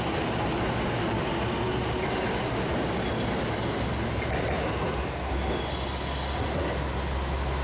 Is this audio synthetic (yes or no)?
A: no